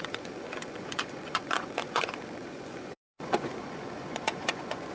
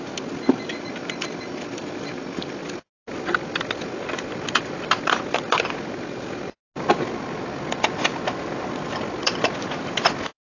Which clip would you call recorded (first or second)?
second